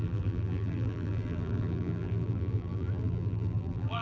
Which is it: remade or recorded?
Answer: remade